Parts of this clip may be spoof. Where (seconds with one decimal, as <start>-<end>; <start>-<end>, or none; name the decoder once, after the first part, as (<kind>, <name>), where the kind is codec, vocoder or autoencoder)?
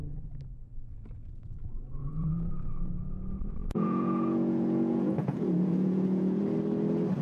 2.0-2.5 (vocoder, Vocos); 3.6-6.4